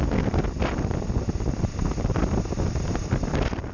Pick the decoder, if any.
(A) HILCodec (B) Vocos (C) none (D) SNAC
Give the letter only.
C